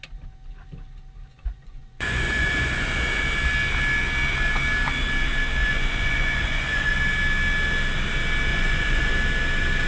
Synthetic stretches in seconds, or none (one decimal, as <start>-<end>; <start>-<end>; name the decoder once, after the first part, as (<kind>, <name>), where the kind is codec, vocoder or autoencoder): 1.3-3.2 (vocoder, Vocos); 5.6-6.9; 8.5-9.1